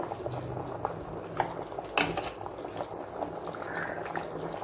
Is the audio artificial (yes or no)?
no